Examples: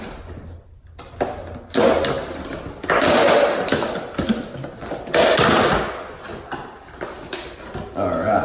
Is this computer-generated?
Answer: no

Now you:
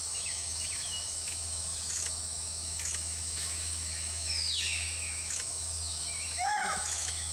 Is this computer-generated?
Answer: yes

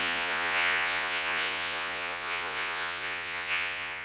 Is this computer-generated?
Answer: yes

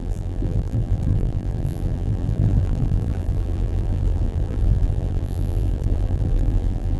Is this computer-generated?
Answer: yes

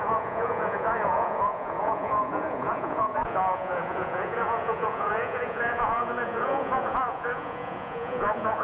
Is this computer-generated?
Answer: yes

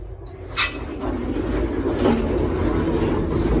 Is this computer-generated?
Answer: no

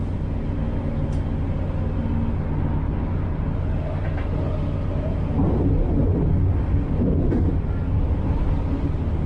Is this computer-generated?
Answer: no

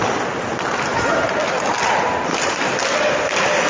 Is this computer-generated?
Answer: no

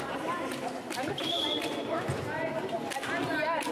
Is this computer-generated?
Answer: no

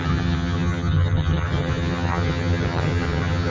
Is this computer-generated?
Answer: yes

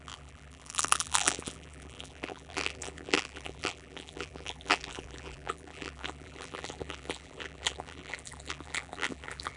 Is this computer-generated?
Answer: yes